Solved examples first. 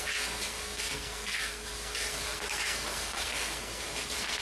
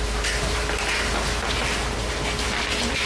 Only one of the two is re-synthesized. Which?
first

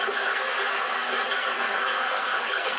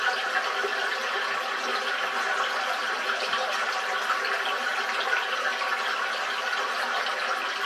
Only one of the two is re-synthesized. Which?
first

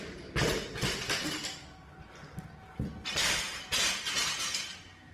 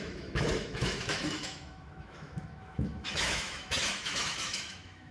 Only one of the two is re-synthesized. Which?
second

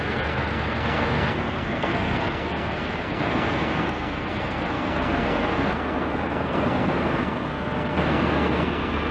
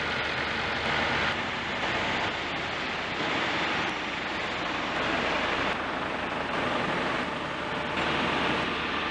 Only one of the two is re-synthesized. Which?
first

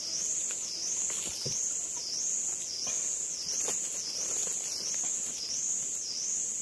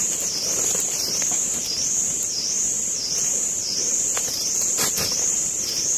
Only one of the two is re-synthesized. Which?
second